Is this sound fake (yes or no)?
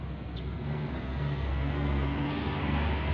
yes